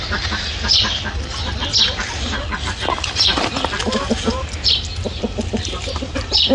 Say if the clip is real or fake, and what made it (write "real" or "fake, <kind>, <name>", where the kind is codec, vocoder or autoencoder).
real